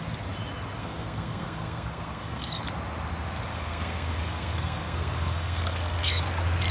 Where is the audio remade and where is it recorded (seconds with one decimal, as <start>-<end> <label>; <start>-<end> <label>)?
0.0-0.8 recorded; 0.8-2.6 remade; 2.6-3.5 recorded; 3.5-6.2 remade; 6.2-6.7 recorded